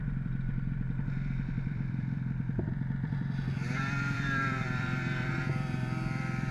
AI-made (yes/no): yes